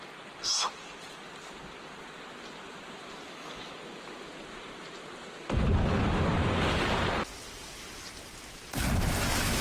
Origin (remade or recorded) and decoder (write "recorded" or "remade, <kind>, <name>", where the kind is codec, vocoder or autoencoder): recorded